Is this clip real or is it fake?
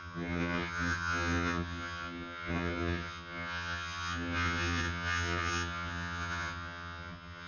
fake